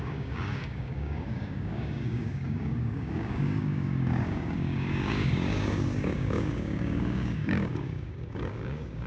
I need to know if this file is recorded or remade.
remade